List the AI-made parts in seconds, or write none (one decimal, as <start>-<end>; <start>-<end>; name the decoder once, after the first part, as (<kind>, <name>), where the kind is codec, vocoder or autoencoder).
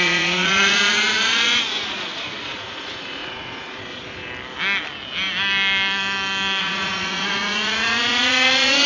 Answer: 0.0-4.2 (vocoder, Vocos); 6.6-8.9